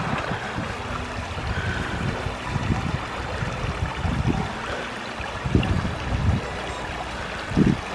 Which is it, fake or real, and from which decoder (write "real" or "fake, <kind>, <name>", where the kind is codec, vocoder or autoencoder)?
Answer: real